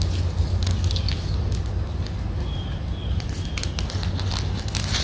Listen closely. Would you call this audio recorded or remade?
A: recorded